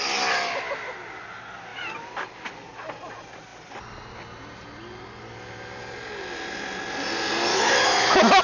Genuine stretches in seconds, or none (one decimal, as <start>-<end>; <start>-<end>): 0.0-7.5